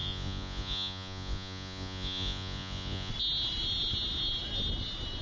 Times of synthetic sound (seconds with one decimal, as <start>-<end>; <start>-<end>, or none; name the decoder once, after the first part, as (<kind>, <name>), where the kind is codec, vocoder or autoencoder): 0.0-3.1 (vocoder, Vocos)

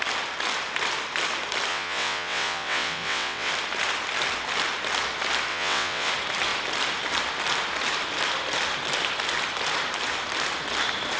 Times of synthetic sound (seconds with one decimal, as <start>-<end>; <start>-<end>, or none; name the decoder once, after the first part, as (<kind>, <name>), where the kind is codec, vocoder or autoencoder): 1.7-3.5 (vocoder, WaveNeXt); 5.5-6.1